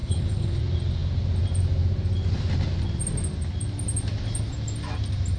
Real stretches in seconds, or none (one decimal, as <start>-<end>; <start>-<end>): 0.6-5.4

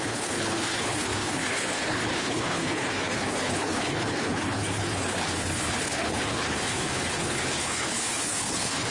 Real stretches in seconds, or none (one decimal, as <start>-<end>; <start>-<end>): none

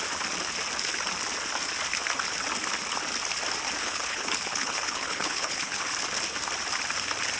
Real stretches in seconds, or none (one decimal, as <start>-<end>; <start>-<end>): 0.0-3.8; 5.8-7.4

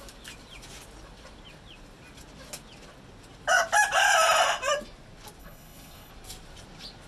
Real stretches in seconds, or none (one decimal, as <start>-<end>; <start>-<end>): 0.0-5.4; 6.1-7.1

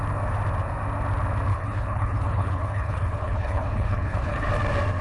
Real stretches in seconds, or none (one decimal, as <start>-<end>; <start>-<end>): 0.0-1.5; 4.5-5.0

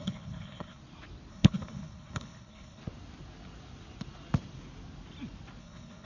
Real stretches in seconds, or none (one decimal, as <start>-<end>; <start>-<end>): 0.8-1.3; 2.8-5.6

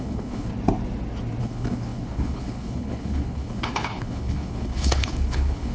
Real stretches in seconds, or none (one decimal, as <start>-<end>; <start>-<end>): 0.5-1.4

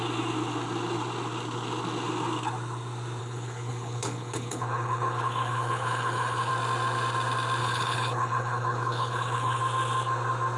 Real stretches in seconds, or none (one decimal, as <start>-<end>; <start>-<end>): 0.0-3.2; 6.5-7.6; 9.6-10.6